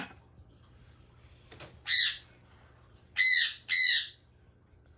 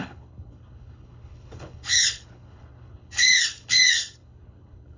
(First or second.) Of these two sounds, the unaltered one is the first